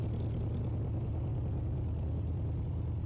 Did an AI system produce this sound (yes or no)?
no